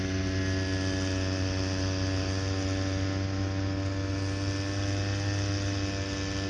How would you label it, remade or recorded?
recorded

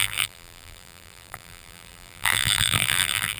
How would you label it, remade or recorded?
remade